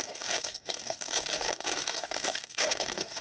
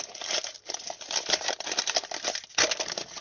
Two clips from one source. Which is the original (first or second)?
second